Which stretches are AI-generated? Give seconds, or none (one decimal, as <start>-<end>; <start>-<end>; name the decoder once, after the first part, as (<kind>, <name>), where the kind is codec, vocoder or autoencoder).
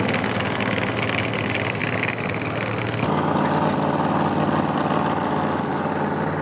none